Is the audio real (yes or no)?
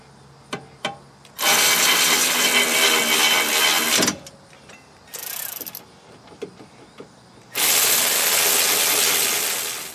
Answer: yes